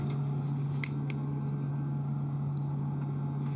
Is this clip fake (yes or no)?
no